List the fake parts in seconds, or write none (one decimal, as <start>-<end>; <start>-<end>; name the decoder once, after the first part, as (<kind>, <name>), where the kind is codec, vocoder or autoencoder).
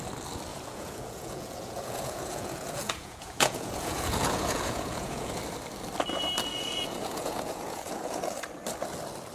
0.5-5.3 (vocoder, Vocos); 6.5-8.2